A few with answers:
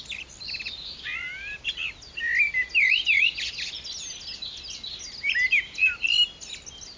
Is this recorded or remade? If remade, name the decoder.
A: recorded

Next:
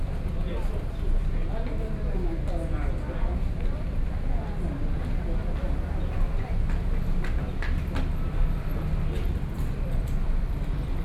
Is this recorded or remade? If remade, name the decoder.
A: recorded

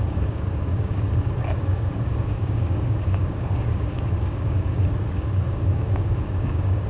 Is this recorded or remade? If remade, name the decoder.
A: remade, codec, DAC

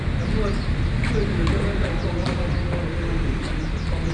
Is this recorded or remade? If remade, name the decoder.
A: recorded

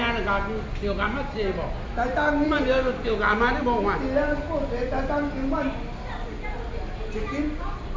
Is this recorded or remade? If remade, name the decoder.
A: recorded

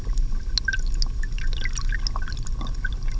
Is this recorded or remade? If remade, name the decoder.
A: recorded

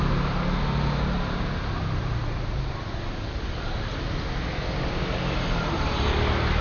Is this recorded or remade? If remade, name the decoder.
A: recorded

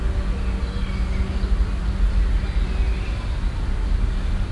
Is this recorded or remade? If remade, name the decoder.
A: recorded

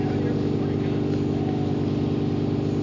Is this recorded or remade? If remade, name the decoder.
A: recorded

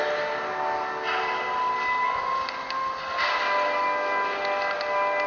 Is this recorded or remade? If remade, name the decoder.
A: recorded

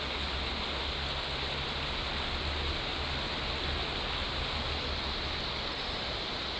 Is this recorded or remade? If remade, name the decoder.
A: recorded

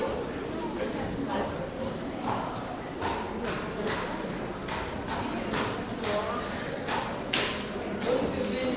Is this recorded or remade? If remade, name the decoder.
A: recorded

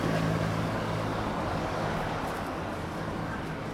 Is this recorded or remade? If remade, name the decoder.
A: remade, codec, DAC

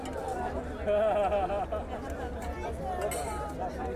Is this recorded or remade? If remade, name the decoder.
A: recorded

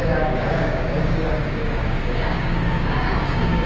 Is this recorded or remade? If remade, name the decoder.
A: remade, codec, DAC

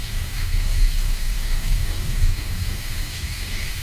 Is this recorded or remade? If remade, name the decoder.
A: remade, codec, DAC